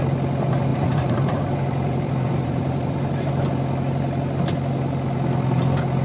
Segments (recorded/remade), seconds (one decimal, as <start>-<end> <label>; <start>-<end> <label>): 0.0-0.7 recorded; 0.7-3.3 remade; 3.3-6.0 recorded